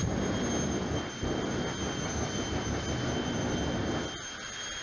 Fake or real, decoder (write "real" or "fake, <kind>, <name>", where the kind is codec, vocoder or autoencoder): real